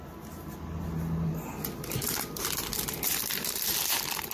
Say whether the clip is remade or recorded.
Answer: recorded